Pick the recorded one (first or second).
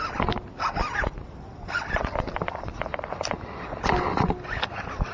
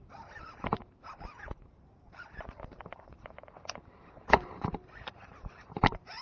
first